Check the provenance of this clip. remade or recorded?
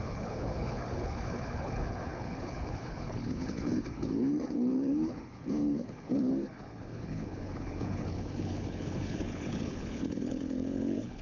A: remade